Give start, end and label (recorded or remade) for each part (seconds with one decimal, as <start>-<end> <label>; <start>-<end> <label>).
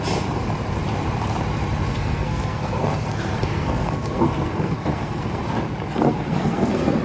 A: 0.0-1.9 recorded; 1.9-5.4 remade; 5.4-5.9 recorded; 5.9-7.0 remade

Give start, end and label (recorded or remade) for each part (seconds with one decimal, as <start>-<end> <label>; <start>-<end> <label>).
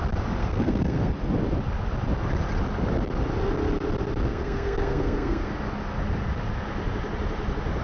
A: 0.0-0.4 recorded; 0.4-1.1 remade; 1.1-4.3 recorded; 4.3-5.5 remade; 5.5-7.8 recorded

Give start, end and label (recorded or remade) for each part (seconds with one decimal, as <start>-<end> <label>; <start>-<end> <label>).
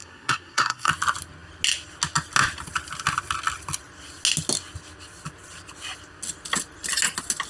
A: 0.0-0.9 remade; 0.9-7.5 recorded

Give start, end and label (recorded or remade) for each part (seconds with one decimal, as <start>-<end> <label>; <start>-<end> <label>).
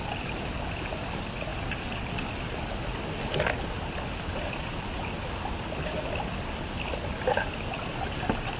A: 0.0-8.6 recorded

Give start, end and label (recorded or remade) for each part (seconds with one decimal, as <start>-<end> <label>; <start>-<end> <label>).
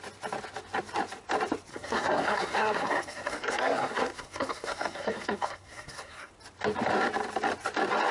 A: 0.0-1.7 recorded; 1.7-6.3 remade; 6.3-8.1 recorded